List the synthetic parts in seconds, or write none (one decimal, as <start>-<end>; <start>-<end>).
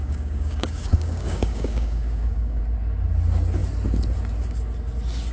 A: 0.0-2.6